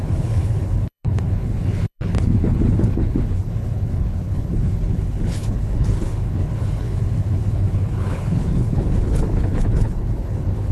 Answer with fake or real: fake